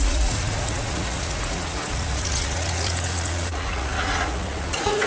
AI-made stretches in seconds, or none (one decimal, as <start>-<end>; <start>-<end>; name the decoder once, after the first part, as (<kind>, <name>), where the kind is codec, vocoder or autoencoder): 0.0-5.1 (vocoder, Vocos)